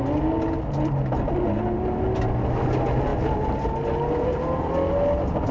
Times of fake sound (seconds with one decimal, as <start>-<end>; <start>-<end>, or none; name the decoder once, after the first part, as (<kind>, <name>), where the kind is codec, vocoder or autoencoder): none